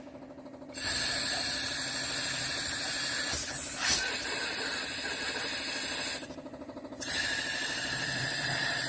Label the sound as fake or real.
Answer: real